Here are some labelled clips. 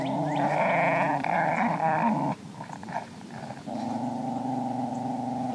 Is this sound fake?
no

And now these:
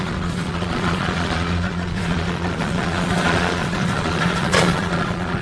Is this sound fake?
yes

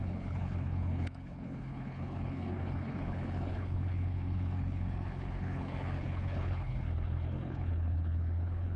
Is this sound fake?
yes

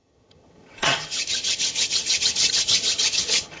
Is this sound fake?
yes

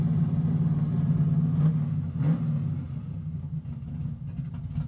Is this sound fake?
no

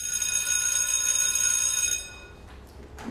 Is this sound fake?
no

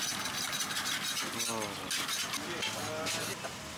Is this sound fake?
no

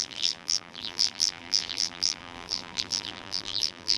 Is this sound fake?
yes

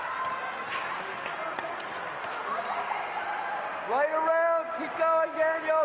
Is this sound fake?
no